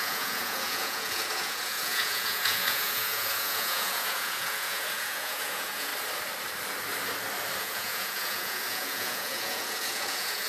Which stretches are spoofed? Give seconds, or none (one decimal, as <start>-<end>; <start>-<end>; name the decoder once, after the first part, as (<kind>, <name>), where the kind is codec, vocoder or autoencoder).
0.0-5.9 (vocoder, Vocos); 7.6-10.5